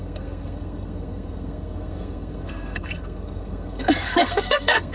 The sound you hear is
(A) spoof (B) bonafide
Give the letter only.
A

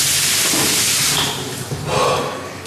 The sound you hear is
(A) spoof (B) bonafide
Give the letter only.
B